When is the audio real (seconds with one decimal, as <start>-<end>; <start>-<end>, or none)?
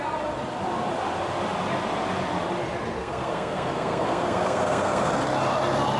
0.0-3.0; 5.1-6.0